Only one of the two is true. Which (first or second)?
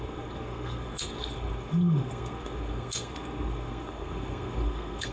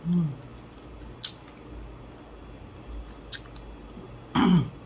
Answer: second